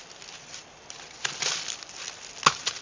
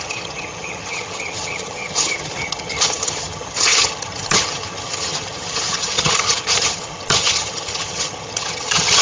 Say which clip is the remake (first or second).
second